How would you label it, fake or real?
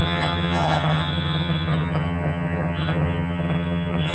fake